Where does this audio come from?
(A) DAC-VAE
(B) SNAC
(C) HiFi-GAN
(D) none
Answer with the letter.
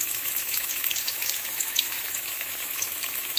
A